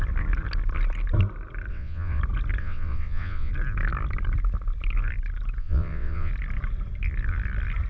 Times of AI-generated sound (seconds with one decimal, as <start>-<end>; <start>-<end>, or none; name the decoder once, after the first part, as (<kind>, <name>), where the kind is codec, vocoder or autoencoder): 1.7-2.2 (vocoder, WaveNeXt); 2.6-3.5; 5.6-6.3